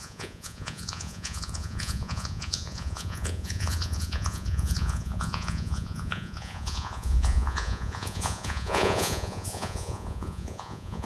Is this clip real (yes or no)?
no